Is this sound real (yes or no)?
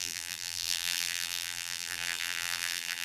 no